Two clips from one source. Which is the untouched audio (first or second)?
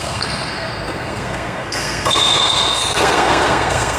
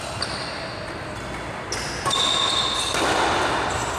second